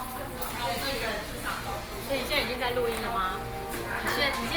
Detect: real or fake real